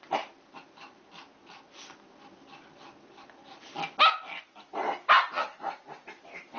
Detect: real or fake real